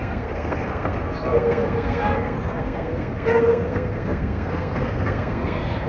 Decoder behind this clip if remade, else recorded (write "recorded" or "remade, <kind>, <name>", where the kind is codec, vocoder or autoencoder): remade, codec, SNAC